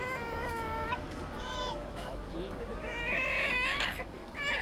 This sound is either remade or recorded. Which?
remade